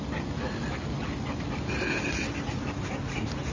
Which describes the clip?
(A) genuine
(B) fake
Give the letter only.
A